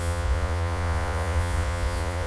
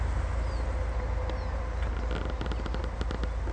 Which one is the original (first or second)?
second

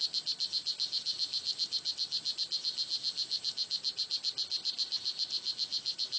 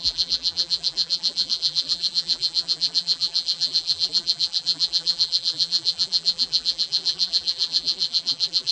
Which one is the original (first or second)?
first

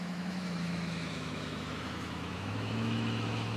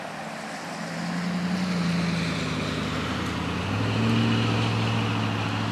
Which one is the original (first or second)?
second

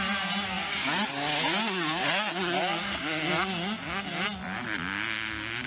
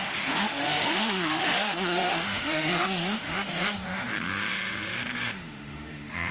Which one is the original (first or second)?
first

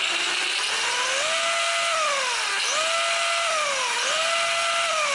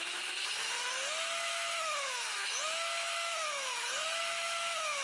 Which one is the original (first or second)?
first